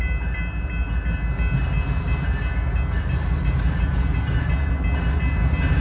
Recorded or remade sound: recorded